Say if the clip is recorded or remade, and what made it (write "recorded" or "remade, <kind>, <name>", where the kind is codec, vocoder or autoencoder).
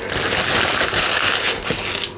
recorded